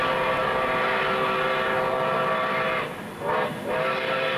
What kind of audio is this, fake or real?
real